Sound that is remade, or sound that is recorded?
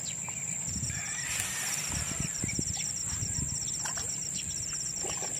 recorded